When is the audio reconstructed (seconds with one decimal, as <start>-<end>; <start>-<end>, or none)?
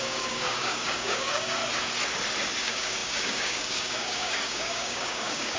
0.0-1.6; 2.6-5.6